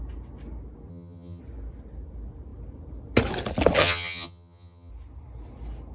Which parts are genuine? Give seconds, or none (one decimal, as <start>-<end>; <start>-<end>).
0.0-0.9; 1.4-3.8; 4.9-5.9